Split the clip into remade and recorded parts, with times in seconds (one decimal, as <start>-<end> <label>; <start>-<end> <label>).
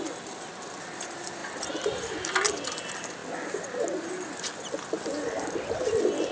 0.0-6.3 recorded